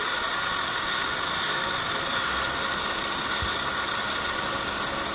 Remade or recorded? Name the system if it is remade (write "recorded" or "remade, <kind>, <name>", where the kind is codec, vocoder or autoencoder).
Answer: recorded